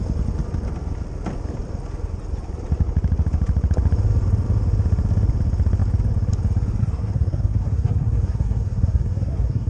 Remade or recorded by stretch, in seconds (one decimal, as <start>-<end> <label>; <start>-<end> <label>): 0.0-6.8 recorded; 6.8-9.7 remade